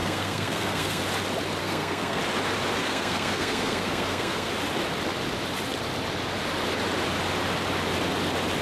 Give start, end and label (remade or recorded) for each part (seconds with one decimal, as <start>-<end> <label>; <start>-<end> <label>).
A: 0.0-1.0 remade; 1.0-1.6 recorded; 1.6-2.2 remade; 2.2-2.8 recorded; 2.8-4.5 remade; 4.5-8.6 recorded